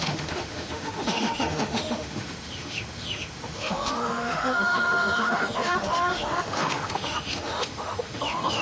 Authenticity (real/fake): fake